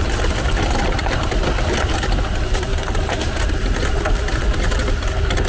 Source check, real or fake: fake